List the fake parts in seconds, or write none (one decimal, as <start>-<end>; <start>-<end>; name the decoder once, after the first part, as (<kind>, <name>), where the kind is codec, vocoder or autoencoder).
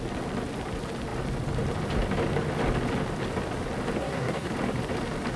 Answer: 4.0-4.5 (codec, SNAC)